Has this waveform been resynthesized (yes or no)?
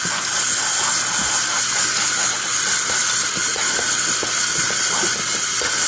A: no